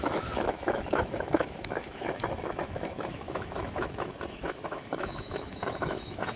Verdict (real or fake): fake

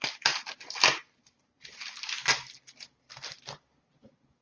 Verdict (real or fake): real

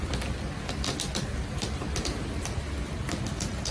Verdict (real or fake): real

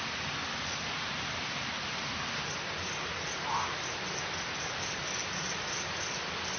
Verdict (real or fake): real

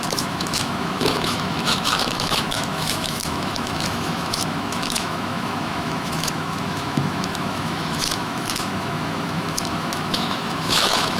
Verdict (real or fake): fake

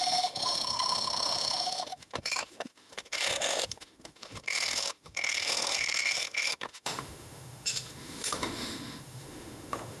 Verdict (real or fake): fake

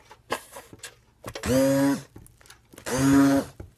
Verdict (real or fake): real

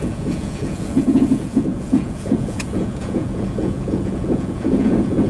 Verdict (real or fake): fake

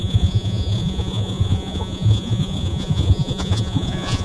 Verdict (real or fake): fake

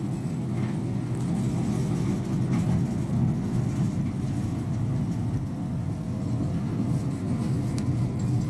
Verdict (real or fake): real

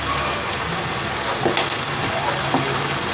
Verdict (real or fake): real